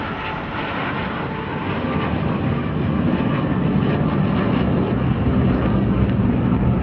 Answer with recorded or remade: recorded